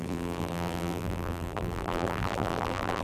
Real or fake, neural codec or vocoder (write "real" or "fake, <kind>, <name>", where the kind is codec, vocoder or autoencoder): fake, vocoder, BigVGAN v2